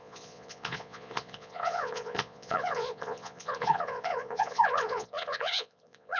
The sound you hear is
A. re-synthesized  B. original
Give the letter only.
A